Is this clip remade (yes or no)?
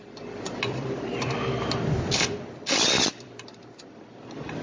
yes